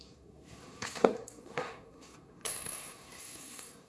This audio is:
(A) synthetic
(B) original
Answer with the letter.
A